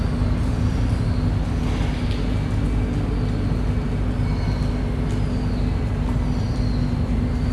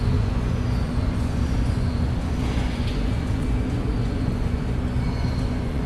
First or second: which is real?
first